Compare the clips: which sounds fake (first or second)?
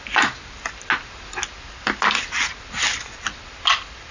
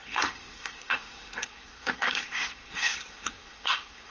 second